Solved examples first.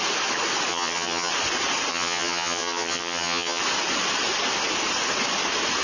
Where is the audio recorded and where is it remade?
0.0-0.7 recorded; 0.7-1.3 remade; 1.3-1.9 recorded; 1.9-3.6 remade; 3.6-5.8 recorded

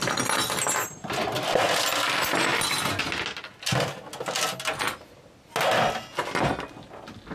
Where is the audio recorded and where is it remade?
0.0-7.3 recorded